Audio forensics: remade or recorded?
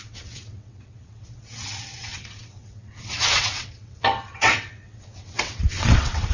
remade